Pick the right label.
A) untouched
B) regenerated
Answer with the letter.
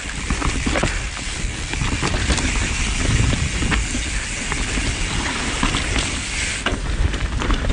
A